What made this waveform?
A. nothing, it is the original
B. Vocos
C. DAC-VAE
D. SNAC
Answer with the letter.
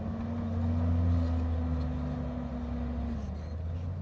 A